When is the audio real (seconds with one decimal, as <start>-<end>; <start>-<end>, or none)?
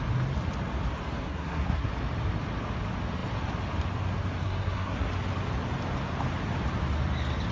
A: 0.0-1.2; 1.9-4.4; 5.1-7.5